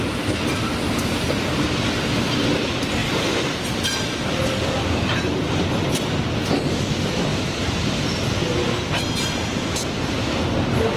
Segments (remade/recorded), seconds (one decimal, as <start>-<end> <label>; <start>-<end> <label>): 0.0-7.3 recorded; 7.3-9.6 remade; 9.6-11.0 recorded